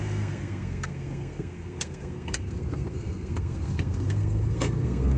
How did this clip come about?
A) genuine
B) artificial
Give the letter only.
B